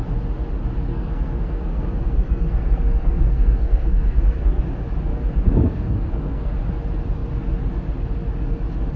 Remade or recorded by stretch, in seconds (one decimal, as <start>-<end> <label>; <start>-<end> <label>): 0.0-0.9 recorded; 0.9-4.6 remade; 4.6-5.1 recorded; 5.1-6.5 remade; 6.5-9.0 recorded